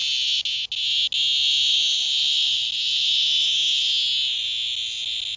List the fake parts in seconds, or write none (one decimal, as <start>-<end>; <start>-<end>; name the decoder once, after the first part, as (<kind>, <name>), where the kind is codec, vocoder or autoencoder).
1.7-3.9 (autoencoder, DAC-VAE)